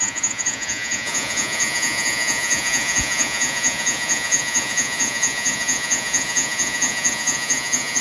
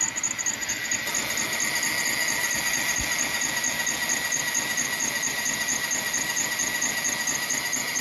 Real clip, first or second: second